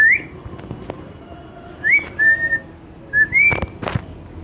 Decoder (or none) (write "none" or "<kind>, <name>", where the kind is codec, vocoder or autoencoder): none